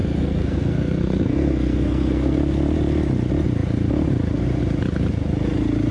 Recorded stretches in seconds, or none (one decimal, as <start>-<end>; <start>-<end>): 2.4-5.9